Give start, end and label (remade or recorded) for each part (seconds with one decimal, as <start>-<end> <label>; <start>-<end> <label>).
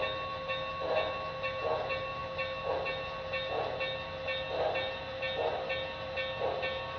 0.0-7.0 recorded